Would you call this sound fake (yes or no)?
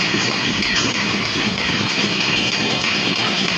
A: yes